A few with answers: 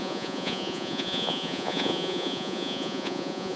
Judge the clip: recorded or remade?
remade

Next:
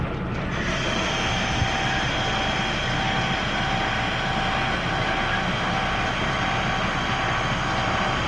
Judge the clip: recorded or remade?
recorded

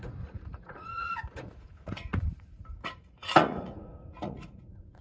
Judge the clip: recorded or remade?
remade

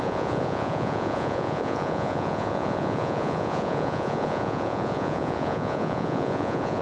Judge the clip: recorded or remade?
remade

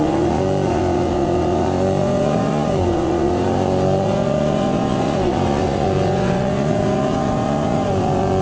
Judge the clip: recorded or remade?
remade